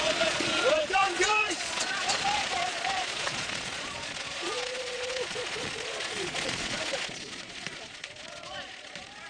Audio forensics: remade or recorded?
remade